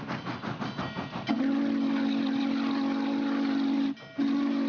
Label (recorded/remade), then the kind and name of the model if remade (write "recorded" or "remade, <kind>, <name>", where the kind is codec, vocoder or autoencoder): recorded